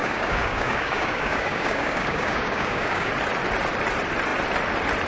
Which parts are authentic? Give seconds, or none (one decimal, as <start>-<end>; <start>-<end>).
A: 3.1-5.1